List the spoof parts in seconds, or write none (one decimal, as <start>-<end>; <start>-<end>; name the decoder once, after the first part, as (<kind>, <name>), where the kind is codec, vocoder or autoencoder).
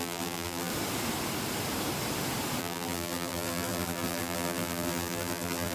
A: 0.0-0.7 (vocoder, BigVGAN v2); 2.6-5.7